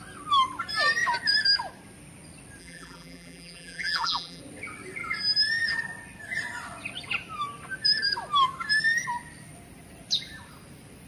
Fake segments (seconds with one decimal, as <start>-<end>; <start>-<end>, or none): 2.6-4.4